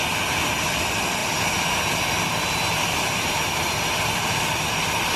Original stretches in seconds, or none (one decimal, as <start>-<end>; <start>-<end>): 0.0-5.2